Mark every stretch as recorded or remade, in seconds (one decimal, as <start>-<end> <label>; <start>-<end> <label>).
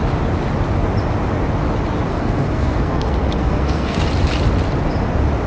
0.0-2.1 recorded; 2.1-4.0 remade; 4.0-5.5 recorded